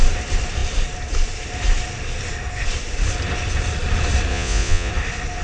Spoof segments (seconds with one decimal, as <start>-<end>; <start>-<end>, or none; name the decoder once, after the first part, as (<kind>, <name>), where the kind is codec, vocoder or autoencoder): 4.3-4.9 (vocoder, Vocos)